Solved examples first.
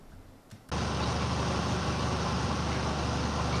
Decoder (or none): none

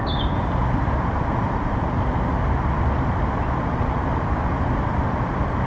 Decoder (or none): none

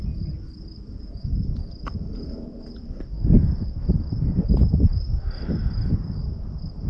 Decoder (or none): none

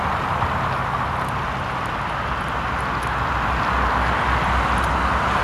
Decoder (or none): none